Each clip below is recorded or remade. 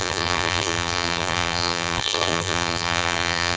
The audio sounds remade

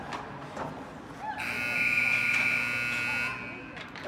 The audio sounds recorded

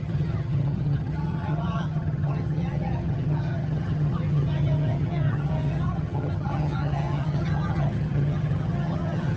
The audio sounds remade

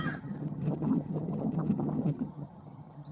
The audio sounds remade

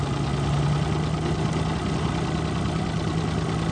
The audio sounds recorded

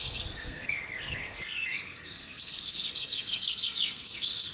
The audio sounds remade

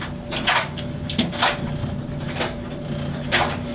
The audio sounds recorded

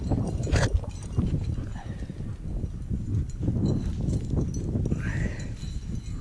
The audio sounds recorded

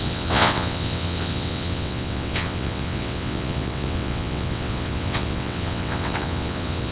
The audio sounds remade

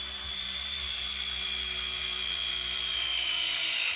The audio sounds remade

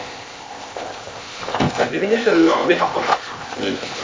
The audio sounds remade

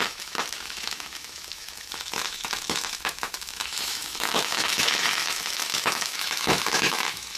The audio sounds remade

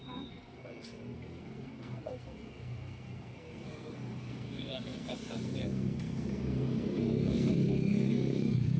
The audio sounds remade